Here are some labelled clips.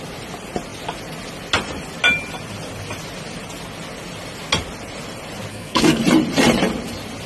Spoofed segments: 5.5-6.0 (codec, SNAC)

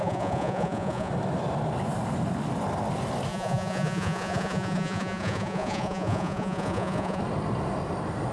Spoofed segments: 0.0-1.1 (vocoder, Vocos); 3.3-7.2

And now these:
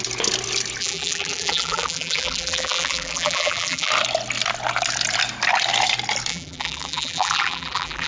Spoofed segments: 0.8-3.9 (vocoder, BigVGAN v2); 6.3-8.1